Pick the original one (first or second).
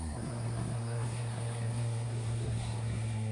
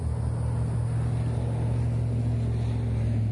second